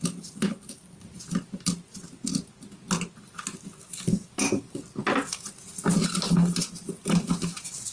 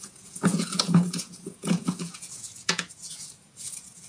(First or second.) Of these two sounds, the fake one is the second